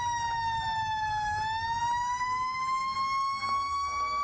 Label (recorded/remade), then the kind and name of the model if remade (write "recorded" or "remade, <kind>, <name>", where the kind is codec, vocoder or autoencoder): remade, autoencoder, DAC-VAE